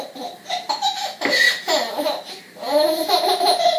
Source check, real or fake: fake